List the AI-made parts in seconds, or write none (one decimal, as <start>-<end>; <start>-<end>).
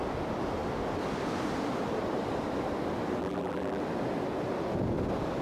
3.2-3.8